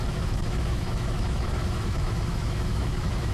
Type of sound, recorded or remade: remade